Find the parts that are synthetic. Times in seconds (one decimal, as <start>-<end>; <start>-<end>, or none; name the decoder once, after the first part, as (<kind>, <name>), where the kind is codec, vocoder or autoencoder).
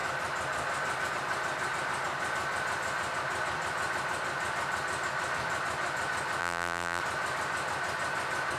6.4-7.0 (vocoder, BigVGAN v2)